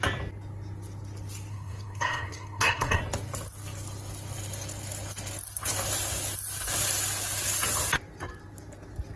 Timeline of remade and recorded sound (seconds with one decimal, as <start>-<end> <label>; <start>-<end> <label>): 0.0-1.5 recorded; 1.5-3.0 remade; 3.0-9.2 recorded